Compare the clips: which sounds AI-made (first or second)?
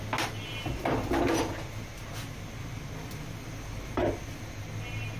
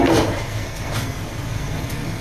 second